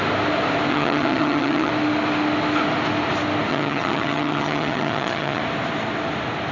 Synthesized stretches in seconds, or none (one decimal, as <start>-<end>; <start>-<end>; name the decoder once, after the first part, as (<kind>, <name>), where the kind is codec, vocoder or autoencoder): 0.7-1.7 (vocoder, HiFi-GAN); 3.5-5.4